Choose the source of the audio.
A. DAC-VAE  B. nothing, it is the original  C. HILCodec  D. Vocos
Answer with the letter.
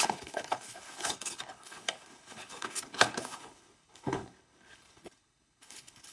C